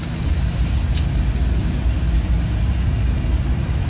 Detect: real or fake real